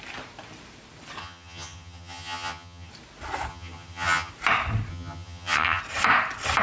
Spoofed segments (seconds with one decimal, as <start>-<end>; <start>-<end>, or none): 1.2-2.9; 3.5-4.3; 4.9-5.8